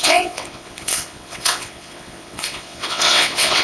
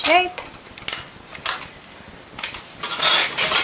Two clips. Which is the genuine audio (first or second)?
second